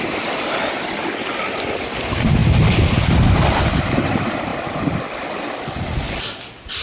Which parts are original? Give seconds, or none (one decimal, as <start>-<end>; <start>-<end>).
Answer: 0.0-6.8